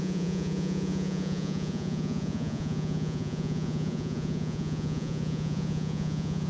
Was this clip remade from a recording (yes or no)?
yes